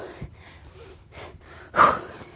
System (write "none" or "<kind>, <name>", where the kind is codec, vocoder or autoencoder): vocoder, BigVGAN v2